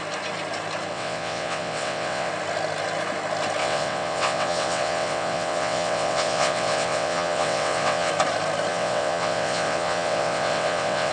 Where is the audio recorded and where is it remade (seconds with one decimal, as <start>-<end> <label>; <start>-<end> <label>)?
0.0-0.9 recorded; 0.9-2.3 remade; 2.3-3.6 recorded; 3.6-8.1 remade; 8.1-8.7 recorded; 8.7-11.1 remade